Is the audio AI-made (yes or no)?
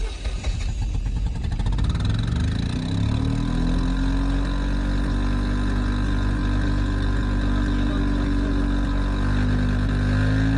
no